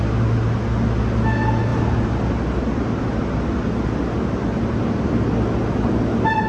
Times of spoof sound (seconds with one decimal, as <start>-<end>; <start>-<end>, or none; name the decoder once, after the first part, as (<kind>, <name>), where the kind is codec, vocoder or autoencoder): none